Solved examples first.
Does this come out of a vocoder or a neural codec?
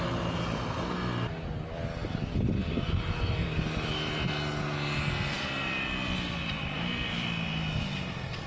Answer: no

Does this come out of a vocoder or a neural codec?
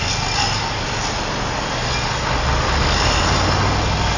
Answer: no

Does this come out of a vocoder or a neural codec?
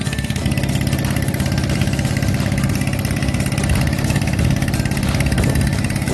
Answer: no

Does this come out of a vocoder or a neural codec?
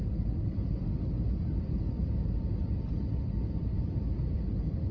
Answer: no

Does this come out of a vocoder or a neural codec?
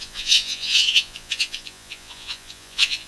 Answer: yes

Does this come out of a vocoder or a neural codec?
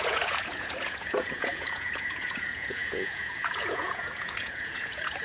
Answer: yes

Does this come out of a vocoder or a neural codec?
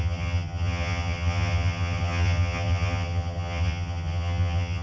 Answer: yes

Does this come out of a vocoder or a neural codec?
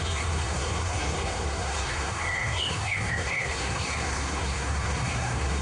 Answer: yes